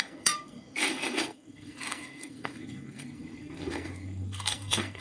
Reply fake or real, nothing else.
fake